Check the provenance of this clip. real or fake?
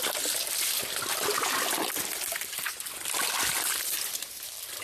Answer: real